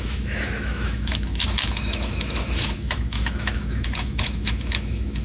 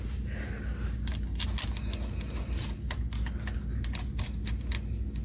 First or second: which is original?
second